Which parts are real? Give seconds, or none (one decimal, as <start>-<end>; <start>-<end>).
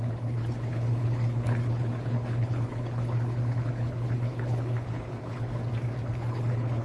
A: 5.6-6.1